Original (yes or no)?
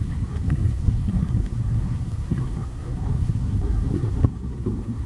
no